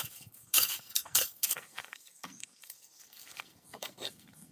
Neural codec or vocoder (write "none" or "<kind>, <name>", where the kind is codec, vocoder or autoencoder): codec, SNAC